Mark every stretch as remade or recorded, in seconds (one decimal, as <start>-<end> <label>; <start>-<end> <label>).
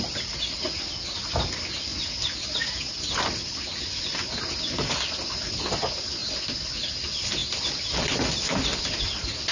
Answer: 0.0-9.5 recorded